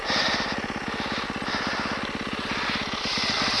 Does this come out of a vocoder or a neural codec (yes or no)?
no